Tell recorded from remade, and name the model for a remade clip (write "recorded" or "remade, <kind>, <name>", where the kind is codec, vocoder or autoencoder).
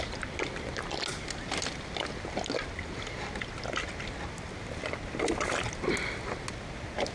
recorded